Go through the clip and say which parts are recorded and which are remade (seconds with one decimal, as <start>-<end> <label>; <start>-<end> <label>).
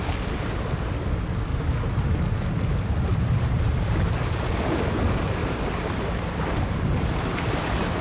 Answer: 0.0-1.5 recorded; 1.5-2.1 remade; 2.1-3.1 recorded; 3.1-4.5 remade; 4.5-5.4 recorded; 5.4-7.6 remade; 7.6-8.0 recorded